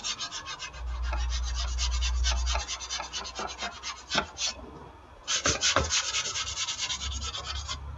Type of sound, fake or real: real